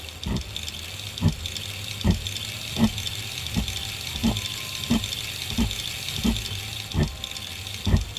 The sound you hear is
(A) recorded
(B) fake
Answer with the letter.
A